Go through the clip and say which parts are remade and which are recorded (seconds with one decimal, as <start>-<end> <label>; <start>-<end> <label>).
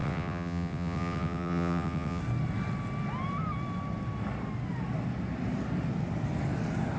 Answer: 0.0-2.2 remade; 2.2-7.0 recorded